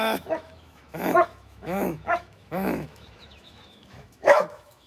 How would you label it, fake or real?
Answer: fake